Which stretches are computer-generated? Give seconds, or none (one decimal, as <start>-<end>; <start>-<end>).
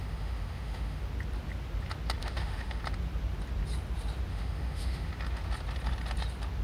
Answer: 0.0-1.0; 2.2-2.8; 4.3-5.1